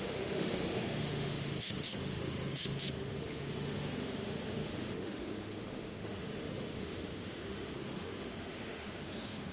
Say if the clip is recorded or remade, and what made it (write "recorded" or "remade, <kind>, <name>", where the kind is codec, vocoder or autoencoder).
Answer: remade, autoencoder, DAC-VAE